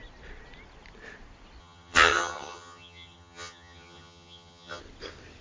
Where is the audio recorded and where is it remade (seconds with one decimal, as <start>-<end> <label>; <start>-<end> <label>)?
0.0-1.6 recorded; 1.6-4.8 remade; 4.8-5.4 recorded